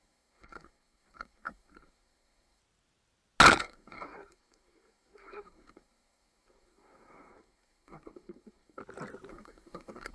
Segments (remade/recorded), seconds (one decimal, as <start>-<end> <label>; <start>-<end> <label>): 0.0-2.6 remade; 2.6-3.6 recorded; 3.6-8.8 remade; 8.8-9.3 recorded; 9.3-10.1 remade